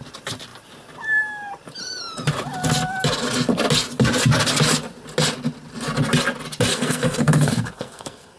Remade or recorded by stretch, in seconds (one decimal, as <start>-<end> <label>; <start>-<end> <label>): 0.0-6.7 recorded; 6.7-8.4 remade